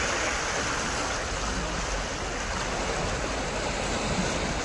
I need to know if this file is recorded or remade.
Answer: recorded